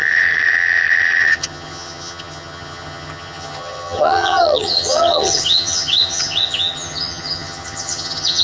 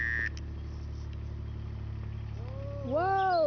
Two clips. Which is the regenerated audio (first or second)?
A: first